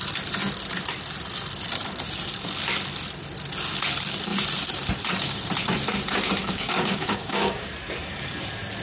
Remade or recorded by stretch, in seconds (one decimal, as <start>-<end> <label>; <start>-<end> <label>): 0.0-6.4 recorded; 6.4-7.7 remade; 7.7-8.8 recorded